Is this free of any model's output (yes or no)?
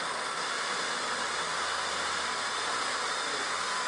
yes